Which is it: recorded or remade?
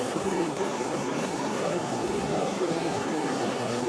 remade